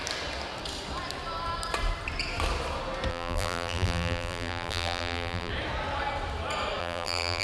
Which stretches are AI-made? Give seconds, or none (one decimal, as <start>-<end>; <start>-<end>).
3.1-5.5; 6.8-7.4

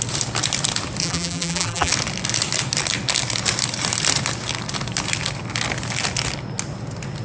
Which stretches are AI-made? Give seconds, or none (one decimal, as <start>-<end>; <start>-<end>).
1.0-1.9

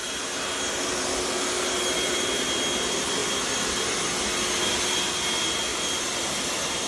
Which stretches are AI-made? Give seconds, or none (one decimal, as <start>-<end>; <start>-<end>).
0.0-0.6; 5.7-6.9

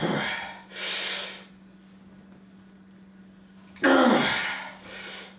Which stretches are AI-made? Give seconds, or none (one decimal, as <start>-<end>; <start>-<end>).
none

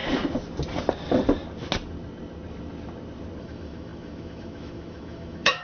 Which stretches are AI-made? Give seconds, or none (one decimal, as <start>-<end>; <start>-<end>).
3.4-5.6

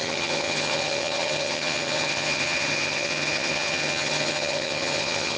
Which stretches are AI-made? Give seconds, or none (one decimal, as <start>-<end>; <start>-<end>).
0.0-5.4

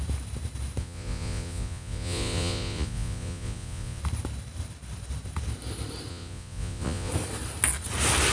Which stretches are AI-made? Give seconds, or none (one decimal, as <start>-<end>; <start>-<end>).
0.8-4.0; 6.1-7.1